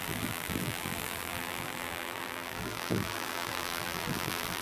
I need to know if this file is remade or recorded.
remade